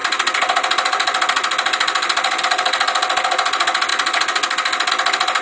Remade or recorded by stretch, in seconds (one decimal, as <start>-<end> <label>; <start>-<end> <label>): 0.0-5.4 recorded